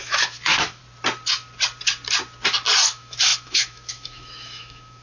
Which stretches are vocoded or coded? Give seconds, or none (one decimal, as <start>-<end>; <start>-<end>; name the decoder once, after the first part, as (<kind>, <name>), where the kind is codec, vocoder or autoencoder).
0.0-0.8 (autoencoder, DAC-VAE); 2.9-5.0